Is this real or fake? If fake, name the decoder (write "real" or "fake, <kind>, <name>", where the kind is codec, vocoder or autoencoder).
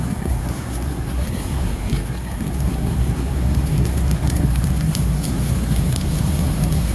fake, codec, SNAC